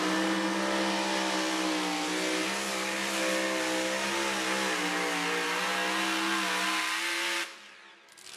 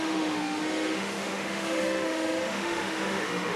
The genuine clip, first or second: first